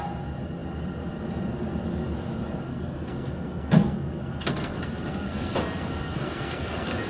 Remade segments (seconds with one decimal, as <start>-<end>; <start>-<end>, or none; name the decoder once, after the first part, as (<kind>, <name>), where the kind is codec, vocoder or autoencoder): 2.7-7.1 (codec, SNAC)